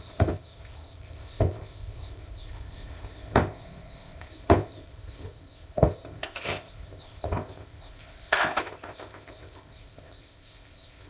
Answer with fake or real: fake